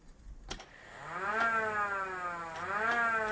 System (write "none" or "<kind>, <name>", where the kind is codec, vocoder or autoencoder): none